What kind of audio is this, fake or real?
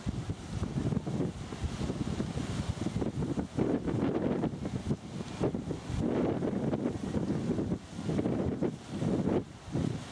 real